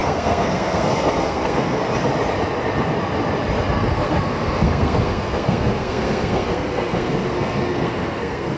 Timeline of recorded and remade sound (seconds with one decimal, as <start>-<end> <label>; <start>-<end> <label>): 0.0-1.8 remade; 1.8-3.8 recorded; 3.8-8.6 remade